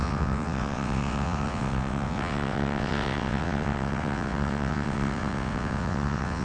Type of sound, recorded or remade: remade